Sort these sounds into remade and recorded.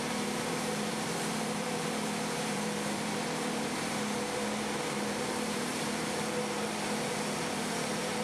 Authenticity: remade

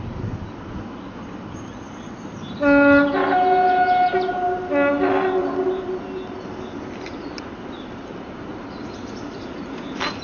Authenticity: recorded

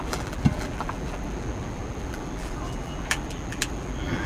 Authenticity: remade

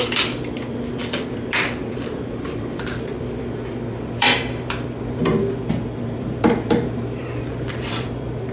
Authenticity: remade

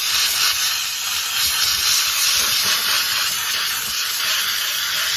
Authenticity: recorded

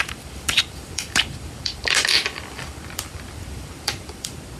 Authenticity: remade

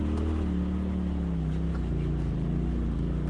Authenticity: recorded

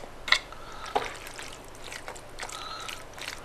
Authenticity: recorded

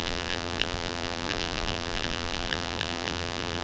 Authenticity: remade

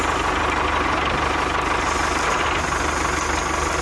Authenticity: recorded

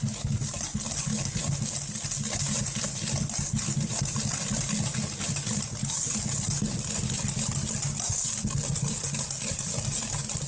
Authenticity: recorded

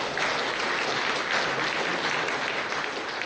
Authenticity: recorded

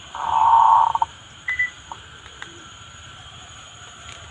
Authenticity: remade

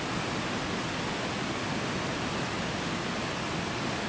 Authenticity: recorded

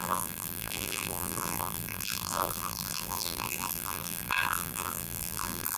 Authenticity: remade